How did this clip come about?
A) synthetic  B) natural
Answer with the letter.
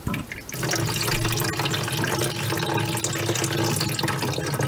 B